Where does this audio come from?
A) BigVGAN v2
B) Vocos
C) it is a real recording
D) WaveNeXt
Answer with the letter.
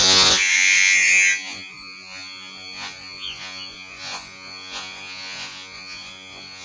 B